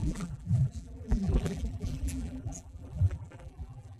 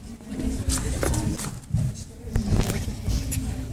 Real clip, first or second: second